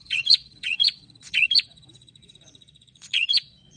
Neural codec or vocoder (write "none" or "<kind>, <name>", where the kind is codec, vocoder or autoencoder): vocoder, Vocos